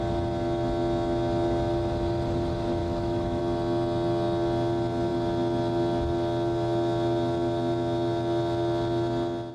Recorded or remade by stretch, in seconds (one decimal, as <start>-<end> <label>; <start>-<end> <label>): 0.0-2.8 recorded; 2.8-3.4 remade; 3.4-9.5 recorded

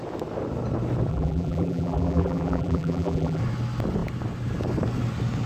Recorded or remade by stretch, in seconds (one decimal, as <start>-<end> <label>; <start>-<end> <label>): 0.0-1.1 recorded; 1.1-3.4 remade; 3.4-5.5 recorded

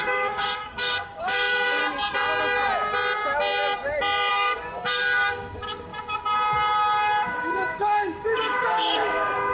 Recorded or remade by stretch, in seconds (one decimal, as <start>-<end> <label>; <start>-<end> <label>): 0.0-1.8 remade; 1.8-4.3 recorded; 4.3-5.9 remade; 5.9-7.3 recorded; 7.3-9.5 remade

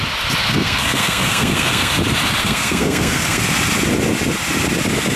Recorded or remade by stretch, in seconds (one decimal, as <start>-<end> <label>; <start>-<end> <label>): 0.0-0.4 recorded; 0.4-1.9 remade; 1.9-2.4 recorded; 2.4-3.4 remade; 3.4-5.2 recorded

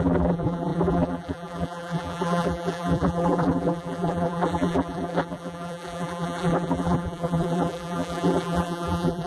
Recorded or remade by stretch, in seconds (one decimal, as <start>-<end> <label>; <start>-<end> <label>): 0.0-9.3 remade

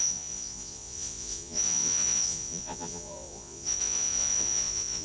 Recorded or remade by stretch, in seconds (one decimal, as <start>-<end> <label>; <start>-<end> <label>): 0.0-5.0 remade

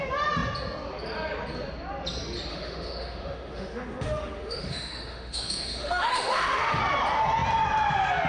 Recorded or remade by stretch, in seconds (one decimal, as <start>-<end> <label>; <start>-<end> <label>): 0.0-2.5 recorded; 2.5-6.8 remade; 6.8-8.3 recorded

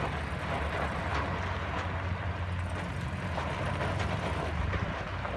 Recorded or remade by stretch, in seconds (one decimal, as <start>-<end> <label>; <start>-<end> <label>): 0.0-5.4 recorded